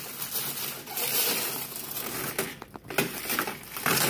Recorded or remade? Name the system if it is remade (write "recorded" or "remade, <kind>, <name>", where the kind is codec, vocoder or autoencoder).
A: recorded